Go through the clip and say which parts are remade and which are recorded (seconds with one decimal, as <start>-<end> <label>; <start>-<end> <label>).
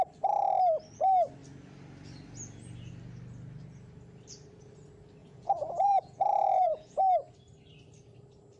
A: 0.0-5.2 recorded; 5.2-7.0 remade; 7.0-8.6 recorded